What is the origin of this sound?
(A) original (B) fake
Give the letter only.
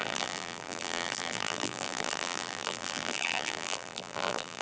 B